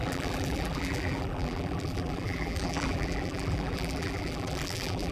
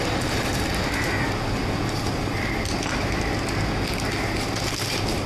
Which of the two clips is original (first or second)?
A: second